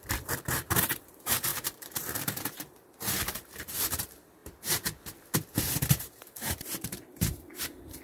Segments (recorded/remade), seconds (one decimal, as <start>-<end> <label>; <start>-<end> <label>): 0.0-4.4 remade; 4.4-6.0 recorded; 6.0-8.0 remade